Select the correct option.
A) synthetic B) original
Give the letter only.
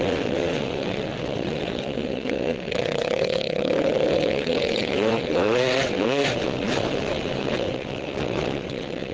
A